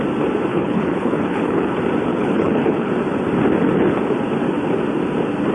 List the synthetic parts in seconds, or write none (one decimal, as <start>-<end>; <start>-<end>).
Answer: 0.5-1.7; 2.1-2.9